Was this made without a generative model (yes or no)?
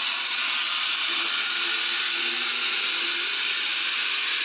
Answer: yes